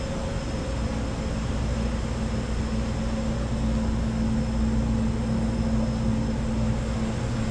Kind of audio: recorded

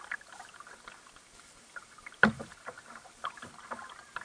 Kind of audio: recorded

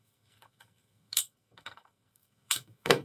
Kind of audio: remade